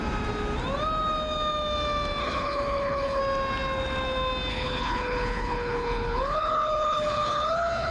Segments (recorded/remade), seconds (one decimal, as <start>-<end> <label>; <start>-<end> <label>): 0.0-2.2 recorded; 2.2-3.2 remade; 3.2-4.5 recorded; 4.5-7.9 remade